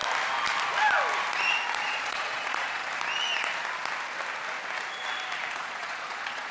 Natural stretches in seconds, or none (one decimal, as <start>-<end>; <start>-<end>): 0.0-1.8; 2.8-5.5